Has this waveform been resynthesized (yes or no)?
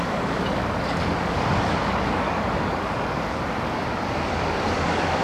yes